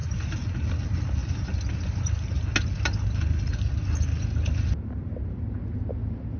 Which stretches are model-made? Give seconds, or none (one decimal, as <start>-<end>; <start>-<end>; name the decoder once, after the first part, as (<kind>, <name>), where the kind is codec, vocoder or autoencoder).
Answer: none